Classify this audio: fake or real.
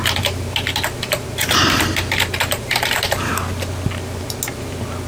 real